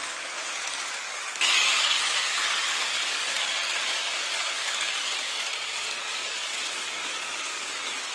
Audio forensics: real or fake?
fake